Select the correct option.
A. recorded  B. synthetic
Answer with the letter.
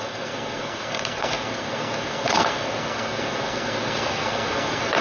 B